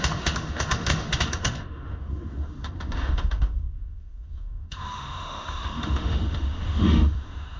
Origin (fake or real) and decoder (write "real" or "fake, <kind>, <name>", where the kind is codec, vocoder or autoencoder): fake, autoencoder, DAC-VAE